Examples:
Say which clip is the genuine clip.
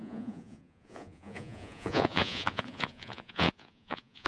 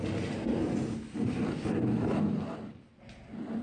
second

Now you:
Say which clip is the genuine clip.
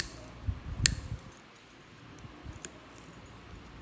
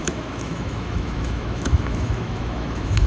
first